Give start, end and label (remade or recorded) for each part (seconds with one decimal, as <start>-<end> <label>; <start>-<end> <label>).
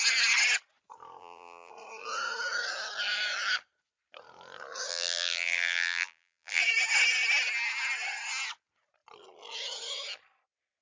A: 0.0-1.2 recorded; 1.2-1.7 remade; 1.7-4.9 recorded; 4.9-6.6 remade; 6.6-10.8 recorded